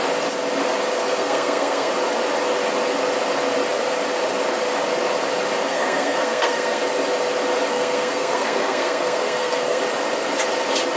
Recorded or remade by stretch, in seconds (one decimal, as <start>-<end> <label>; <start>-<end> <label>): 0.0-1.0 recorded; 1.0-1.9 remade; 1.9-5.6 recorded; 5.6-6.8 remade; 6.8-7.7 recorded; 7.7-9.8 remade; 9.8-11.0 recorded